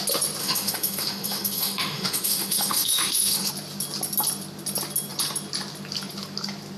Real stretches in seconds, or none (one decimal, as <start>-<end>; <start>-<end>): 0.0-0.4; 3.5-6.8